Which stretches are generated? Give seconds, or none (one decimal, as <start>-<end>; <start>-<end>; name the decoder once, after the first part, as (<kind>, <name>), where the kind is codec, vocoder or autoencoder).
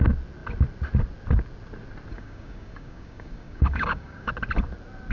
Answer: 2.1-4.3 (codec, DAC)